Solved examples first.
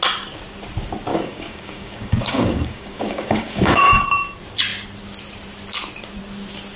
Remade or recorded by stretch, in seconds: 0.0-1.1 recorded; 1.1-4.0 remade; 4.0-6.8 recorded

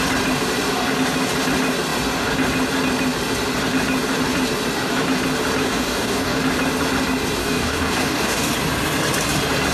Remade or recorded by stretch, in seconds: 0.0-5.6 recorded; 5.6-6.4 remade; 6.4-7.4 recorded; 7.4-8.5 remade; 8.5-9.7 recorded

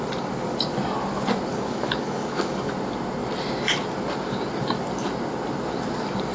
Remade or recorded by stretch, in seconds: 0.0-1.5 recorded; 1.5-2.7 remade; 2.7-6.3 recorded

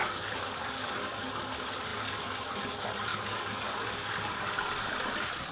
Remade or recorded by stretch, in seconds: 0.0-1.3 remade; 1.3-3.1 recorded; 3.1-4.4 remade; 4.4-5.5 recorded